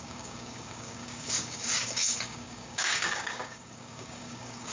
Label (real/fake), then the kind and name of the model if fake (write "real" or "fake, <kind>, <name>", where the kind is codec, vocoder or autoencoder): fake, codec, DAC